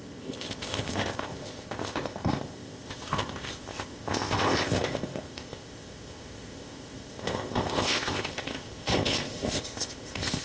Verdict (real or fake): fake